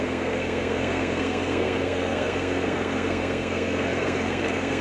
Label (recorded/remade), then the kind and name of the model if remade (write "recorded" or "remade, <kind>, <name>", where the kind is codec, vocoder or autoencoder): remade, codec, SNAC